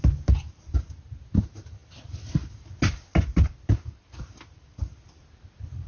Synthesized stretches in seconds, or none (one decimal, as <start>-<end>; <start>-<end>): none